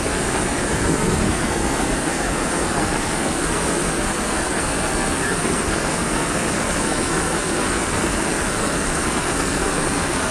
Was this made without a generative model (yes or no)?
no